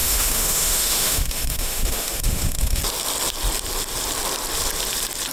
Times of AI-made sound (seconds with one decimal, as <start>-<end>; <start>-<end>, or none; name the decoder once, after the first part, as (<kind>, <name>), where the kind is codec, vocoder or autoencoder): 0.0-2.8 (autoencoder, DAC-VAE)